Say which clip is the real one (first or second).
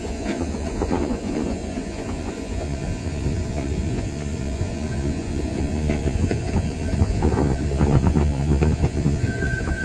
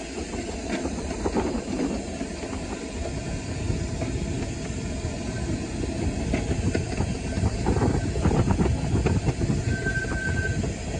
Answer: second